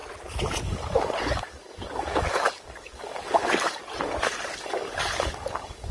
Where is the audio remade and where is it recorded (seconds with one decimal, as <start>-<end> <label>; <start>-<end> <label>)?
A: 0.0-0.6 recorded; 0.6-3.8 remade; 3.8-4.6 recorded; 4.6-5.9 remade

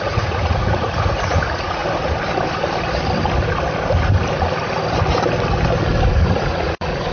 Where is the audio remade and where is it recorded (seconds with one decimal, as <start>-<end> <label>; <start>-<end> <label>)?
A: 0.0-1.8 remade; 1.8-6.1 recorded; 6.1-7.1 remade

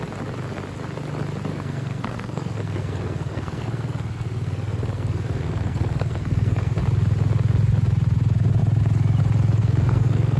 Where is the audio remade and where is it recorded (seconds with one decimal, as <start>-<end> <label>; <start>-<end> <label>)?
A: 0.0-1.5 recorded; 1.5-6.8 remade; 6.8-9.6 recorded; 9.6-10.4 remade

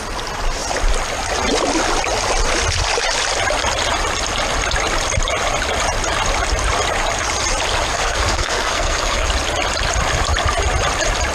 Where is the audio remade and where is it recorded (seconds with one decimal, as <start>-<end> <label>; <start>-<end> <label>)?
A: 0.0-7.9 recorded; 7.9-9.3 remade; 9.3-11.3 recorded

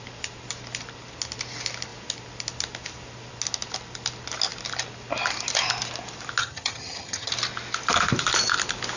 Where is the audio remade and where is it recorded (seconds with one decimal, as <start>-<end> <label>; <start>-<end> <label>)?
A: 0.0-6.4 recorded; 6.4-7.3 remade; 7.3-9.0 recorded

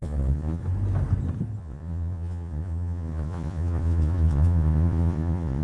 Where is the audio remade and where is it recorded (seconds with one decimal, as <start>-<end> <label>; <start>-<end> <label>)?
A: 0.0-0.6 remade; 0.6-1.6 recorded; 1.6-5.6 remade

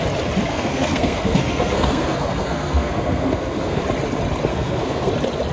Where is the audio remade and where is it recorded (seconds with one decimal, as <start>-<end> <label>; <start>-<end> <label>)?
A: 0.0-0.5 recorded; 0.5-3.8 remade; 3.8-4.5 recorded; 4.5-5.1 remade; 5.1-5.5 recorded